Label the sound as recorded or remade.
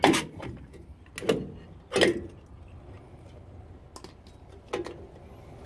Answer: recorded